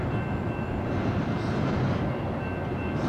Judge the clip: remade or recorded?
recorded